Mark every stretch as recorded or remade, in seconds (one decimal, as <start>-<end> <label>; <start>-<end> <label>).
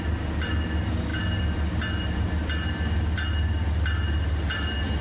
0.0-5.0 recorded